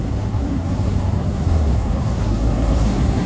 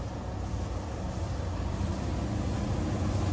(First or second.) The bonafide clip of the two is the second